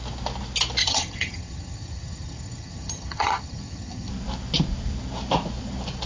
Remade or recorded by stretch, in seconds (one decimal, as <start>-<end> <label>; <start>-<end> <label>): 0.0-0.8 recorded; 0.8-4.1 remade; 4.1-6.1 recorded